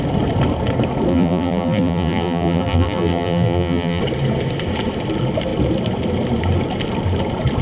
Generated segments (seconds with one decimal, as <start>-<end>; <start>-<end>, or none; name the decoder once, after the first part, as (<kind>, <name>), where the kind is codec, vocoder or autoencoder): 1.1-4.0 (vocoder, BigVGAN v2)